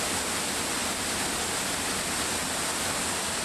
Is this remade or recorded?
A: recorded